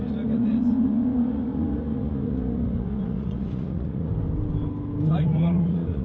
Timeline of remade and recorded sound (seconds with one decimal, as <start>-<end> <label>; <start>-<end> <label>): 0.0-4.1 remade; 4.1-5.1 recorded; 5.1-6.0 remade